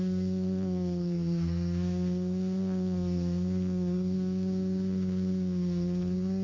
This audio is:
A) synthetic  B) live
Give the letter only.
A